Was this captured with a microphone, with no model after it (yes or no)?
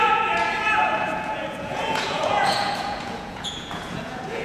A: no